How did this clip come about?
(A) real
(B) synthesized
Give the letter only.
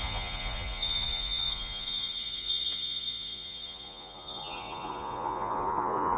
B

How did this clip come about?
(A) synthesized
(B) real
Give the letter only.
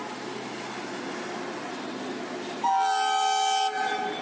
B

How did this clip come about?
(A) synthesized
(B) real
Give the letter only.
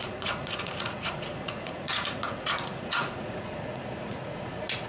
A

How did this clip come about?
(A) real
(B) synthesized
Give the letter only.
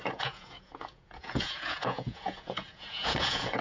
B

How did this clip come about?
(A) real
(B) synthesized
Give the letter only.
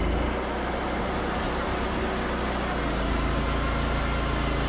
A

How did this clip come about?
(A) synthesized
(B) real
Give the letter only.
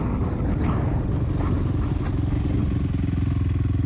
B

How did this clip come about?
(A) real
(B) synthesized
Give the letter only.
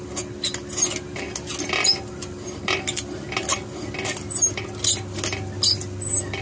A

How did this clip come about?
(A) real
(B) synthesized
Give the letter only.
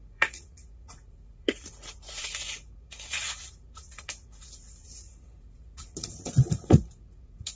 B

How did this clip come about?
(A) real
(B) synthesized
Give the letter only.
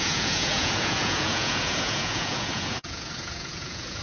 B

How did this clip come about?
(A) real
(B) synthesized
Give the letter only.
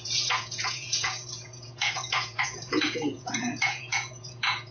B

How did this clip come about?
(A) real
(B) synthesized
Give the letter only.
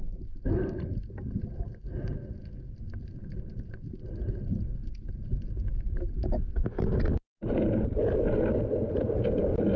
A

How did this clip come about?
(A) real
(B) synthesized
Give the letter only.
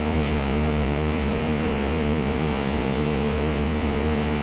B